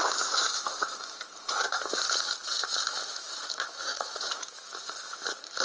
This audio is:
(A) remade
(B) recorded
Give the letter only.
A